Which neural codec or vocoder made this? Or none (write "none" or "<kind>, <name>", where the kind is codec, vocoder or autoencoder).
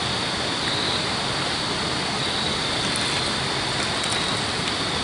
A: none